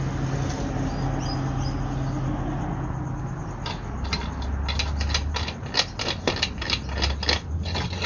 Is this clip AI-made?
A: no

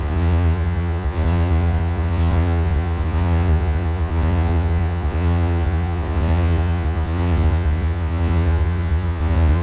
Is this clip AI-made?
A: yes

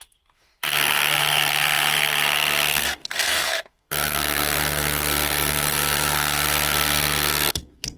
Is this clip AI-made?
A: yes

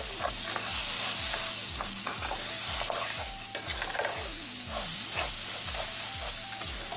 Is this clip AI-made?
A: no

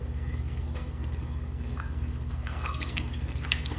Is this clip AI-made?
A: yes